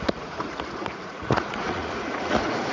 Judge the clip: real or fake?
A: fake